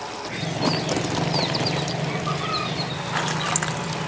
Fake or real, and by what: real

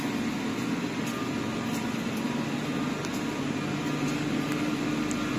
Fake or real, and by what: real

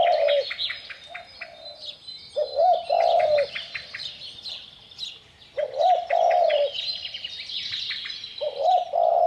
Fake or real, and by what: real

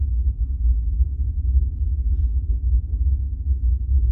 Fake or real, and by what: real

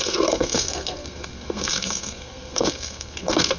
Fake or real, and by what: fake, codec, SNAC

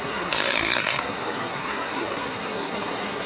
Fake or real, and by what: fake, codec, SNAC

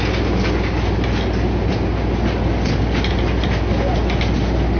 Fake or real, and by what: real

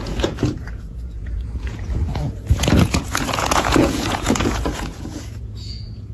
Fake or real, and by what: fake, vocoder, Vocos